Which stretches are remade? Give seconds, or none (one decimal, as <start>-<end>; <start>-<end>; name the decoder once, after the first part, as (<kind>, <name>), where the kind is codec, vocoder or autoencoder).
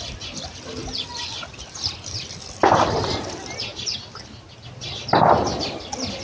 none